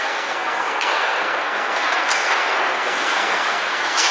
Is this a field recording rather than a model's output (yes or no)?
no